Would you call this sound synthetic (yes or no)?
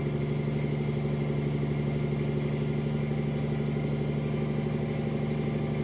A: no